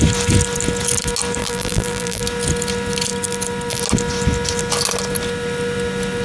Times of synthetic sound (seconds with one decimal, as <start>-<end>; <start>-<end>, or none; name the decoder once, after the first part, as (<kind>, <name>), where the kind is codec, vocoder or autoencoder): 1.4-2.2 (vocoder, BigVGAN v2)